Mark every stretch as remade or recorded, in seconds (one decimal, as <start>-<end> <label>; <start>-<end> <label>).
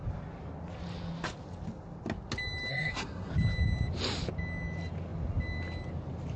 0.0-2.7 recorded; 2.7-3.3 remade; 3.3-6.4 recorded